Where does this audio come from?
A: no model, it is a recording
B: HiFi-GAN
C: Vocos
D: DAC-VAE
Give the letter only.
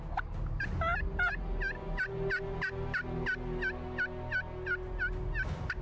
A